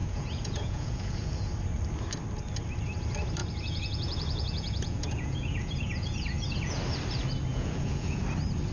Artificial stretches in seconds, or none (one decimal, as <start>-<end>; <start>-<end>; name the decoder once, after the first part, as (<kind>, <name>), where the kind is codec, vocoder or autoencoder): 0.0-1.5 (vocoder, Vocos); 3.4-6.8; 7.5-8.2